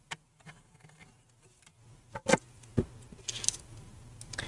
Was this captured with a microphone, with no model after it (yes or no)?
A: yes